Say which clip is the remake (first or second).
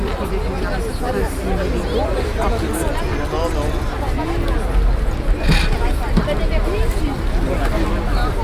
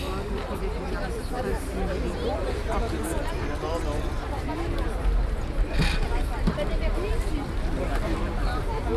second